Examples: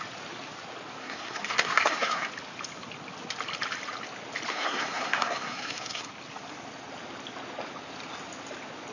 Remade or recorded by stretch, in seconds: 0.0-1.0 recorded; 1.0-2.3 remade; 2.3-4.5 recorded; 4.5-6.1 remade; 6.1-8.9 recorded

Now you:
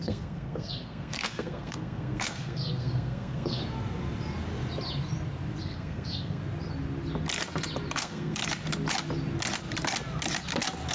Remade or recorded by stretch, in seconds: 0.0-3.6 remade; 3.6-5.6 recorded; 5.6-6.4 remade; 6.4-8.0 recorded; 8.0-8.4 remade; 8.4-10.9 recorded

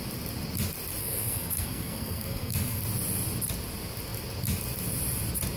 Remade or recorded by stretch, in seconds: 0.0-1.0 recorded; 1.0-2.8 remade; 2.8-5.6 recorded